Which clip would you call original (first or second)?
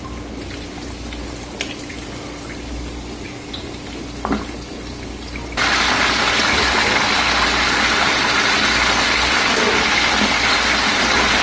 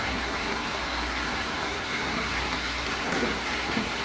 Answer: first